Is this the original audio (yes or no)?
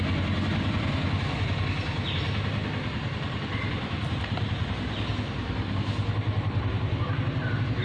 yes